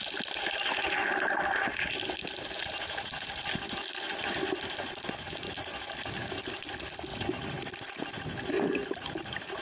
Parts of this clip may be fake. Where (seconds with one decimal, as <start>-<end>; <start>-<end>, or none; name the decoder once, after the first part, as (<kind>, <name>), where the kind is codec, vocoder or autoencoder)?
none